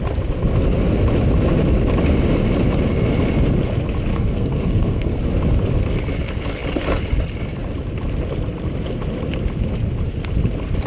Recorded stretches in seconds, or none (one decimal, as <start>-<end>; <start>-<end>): 0.0-4.1; 5.2-10.9

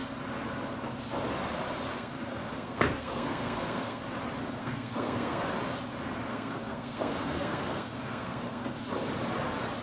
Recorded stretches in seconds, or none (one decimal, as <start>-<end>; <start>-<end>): 0.0-1.9; 4.0-4.6; 5.4-6.3; 8.7-9.8

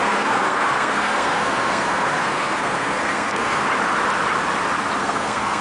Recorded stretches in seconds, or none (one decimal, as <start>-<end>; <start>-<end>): 3.6-5.0

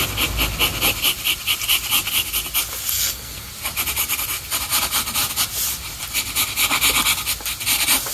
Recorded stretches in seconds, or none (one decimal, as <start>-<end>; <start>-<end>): 0.0-2.9; 3.5-8.1

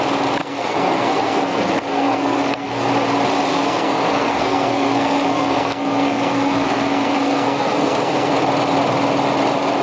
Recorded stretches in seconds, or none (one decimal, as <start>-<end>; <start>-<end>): 0.0-0.4; 2.9-3.5; 8.3-9.8

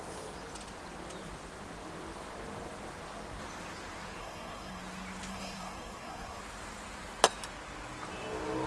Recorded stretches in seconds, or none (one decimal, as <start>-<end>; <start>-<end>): 0.0-4.2; 4.8-5.3; 6.4-8.7

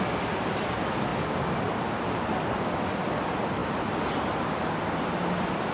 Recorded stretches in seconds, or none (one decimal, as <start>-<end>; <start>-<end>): 0.0-5.7

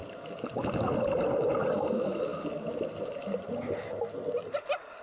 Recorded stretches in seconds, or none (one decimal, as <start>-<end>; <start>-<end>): 0.0-5.0